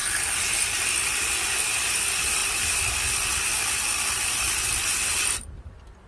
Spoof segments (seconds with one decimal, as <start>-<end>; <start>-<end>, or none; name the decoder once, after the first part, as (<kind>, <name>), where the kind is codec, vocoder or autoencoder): none